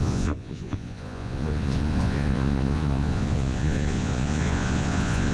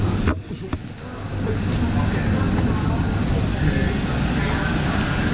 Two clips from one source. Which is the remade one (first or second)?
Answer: first